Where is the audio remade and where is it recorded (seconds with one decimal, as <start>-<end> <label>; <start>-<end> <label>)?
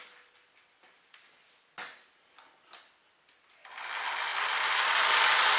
0.0-5.6 recorded